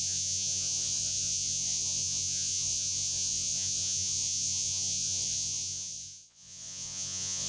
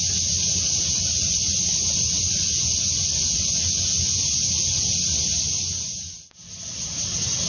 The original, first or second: second